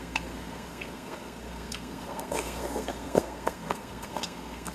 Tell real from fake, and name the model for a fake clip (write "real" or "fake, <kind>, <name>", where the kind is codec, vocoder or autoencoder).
fake, codec, SNAC